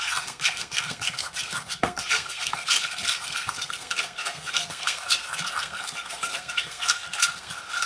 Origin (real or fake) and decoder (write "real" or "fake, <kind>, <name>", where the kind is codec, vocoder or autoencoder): fake, codec, SNAC